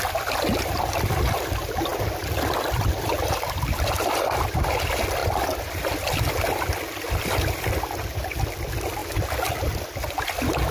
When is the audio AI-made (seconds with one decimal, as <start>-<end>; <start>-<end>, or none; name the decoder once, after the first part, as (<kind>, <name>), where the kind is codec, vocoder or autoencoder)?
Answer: 5.2-5.8 (vocoder, BigVGAN v2); 9.0-9.6

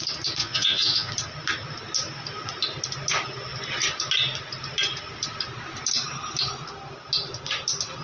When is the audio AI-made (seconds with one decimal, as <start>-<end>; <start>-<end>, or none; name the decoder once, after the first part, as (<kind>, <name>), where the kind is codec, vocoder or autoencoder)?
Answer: 0.4-1.1 (vocoder, Vocos)